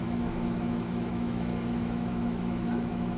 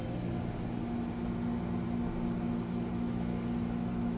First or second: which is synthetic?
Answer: first